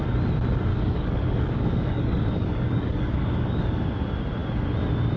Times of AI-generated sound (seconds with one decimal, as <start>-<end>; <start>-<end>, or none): 0.7-3.8